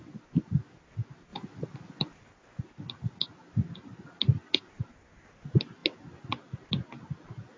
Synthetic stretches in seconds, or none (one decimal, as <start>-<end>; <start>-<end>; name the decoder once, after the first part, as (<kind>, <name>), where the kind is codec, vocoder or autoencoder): none